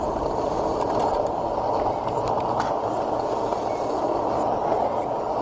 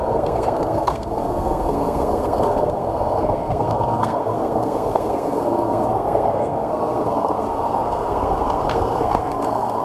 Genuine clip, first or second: first